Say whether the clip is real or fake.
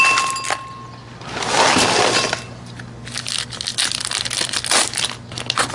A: real